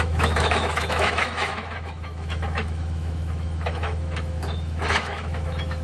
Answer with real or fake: fake